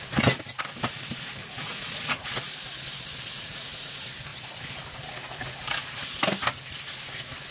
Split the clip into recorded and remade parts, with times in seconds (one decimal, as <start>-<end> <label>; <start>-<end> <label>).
0.0-1.4 recorded; 1.4-2.5 remade; 2.5-3.3 recorded; 3.3-3.9 remade; 3.9-7.5 recorded